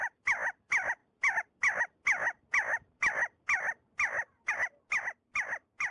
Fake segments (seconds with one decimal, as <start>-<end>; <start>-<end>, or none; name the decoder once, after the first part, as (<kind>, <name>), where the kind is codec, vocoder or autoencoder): none